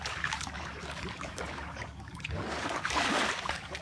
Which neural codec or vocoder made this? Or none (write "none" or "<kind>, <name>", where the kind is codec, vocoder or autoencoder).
codec, DAC